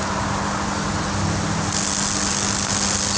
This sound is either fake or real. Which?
real